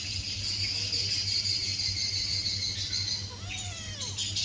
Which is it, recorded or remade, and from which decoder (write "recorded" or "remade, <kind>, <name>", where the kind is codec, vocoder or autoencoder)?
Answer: recorded